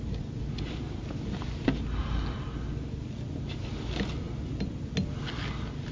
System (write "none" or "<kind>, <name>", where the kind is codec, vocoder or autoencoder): none